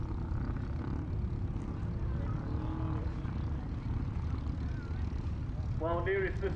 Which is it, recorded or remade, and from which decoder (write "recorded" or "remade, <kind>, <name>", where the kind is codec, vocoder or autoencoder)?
recorded